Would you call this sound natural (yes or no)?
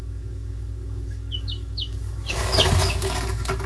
no